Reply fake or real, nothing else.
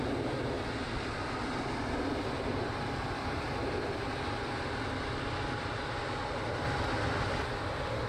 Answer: real